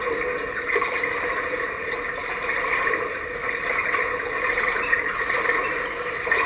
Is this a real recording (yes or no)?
yes